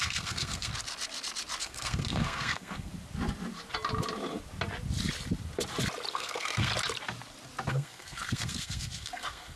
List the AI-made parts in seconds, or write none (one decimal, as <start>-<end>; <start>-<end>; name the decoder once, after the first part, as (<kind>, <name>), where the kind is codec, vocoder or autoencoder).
0.0-0.7 (codec, SNAC); 1.6-2.9; 6.1-6.7; 7.7-9.6